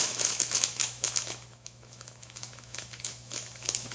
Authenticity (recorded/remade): remade